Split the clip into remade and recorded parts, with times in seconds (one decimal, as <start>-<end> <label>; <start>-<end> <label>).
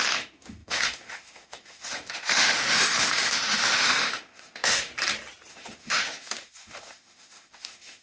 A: 0.0-4.9 remade; 4.9-5.5 recorded; 5.5-8.0 remade